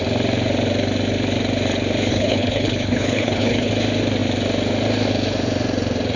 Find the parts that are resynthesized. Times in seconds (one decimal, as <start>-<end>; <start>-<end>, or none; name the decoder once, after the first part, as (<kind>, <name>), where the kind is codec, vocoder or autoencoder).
2.1-3.7 (codec, HILCodec)